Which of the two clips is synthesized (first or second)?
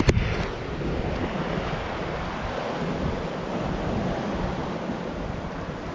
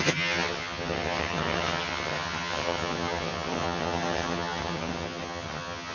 second